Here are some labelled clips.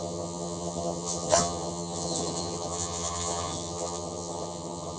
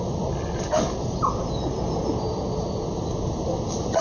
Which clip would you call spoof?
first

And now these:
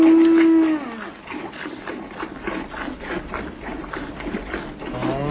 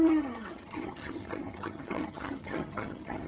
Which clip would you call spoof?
second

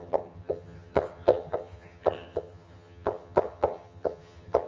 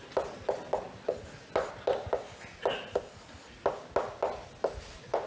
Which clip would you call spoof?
first